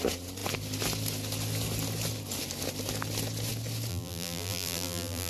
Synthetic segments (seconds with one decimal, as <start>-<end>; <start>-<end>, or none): 3.9-5.3